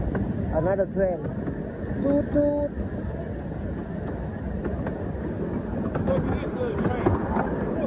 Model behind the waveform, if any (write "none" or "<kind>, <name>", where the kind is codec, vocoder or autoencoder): none